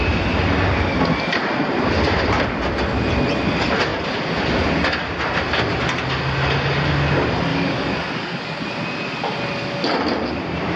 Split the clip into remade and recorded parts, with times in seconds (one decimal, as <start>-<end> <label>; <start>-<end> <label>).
0.0-7.5 recorded; 7.5-8.6 remade; 8.6-10.8 recorded

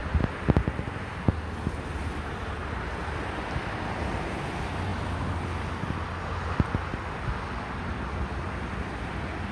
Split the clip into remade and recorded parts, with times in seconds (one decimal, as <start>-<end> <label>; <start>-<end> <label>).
0.0-9.5 recorded

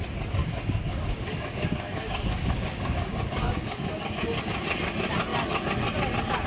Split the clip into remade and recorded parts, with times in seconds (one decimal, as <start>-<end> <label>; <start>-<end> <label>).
0.0-0.4 recorded; 0.4-4.2 remade; 4.2-6.5 recorded

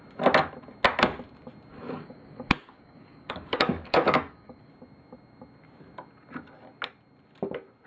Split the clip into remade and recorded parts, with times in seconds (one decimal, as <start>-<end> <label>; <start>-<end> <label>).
0.0-1.7 recorded; 1.7-4.7 remade; 4.7-7.9 recorded

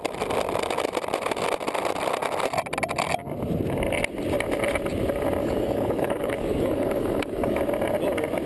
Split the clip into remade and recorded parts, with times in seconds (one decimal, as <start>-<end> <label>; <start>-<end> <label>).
0.0-5.4 recorded; 5.4-7.6 remade; 7.6-8.5 recorded

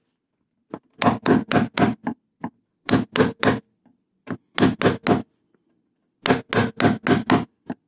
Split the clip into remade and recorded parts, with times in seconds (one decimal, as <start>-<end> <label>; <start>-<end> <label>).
0.0-7.9 recorded